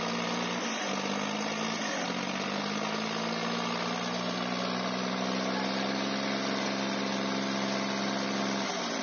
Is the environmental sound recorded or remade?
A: recorded